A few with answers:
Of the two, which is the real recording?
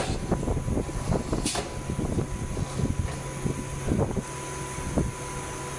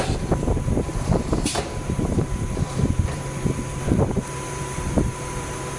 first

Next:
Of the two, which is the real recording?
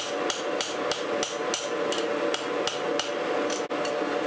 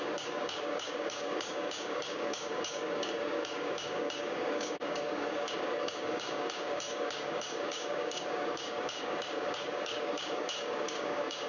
first